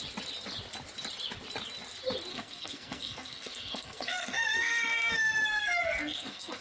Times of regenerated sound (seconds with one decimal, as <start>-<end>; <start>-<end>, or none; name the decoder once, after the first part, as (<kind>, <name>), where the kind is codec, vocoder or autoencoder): 2.3-6.6 (codec, SNAC)